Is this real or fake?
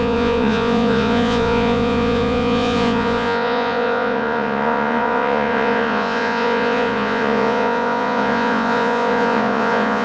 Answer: fake